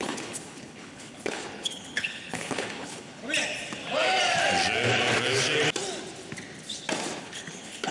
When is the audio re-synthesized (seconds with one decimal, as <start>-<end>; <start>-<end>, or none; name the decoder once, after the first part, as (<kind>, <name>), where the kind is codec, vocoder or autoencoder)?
0.0-3.2 (codec, HILCodec); 7.2-7.9